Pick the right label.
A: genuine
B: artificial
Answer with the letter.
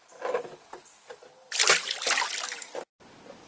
A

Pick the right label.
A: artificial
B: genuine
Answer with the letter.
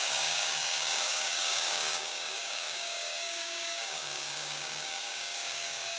A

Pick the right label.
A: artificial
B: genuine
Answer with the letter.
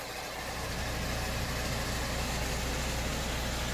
B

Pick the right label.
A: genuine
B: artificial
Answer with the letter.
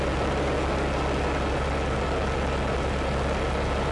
A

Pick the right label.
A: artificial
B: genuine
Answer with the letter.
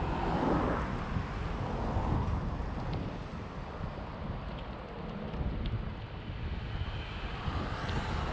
B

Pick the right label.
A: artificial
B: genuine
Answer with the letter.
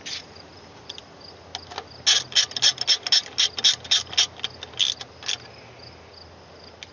B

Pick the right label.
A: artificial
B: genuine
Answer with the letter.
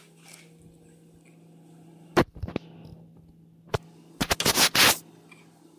B